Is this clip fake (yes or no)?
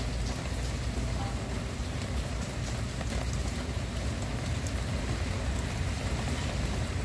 no